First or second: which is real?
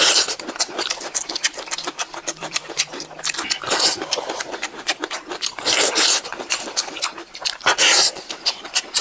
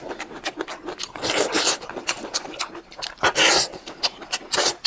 second